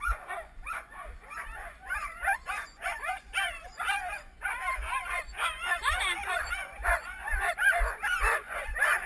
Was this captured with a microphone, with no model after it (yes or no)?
no